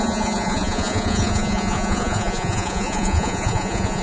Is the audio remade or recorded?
remade